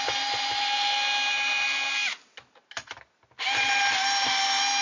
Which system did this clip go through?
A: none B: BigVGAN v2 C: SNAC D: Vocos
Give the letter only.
A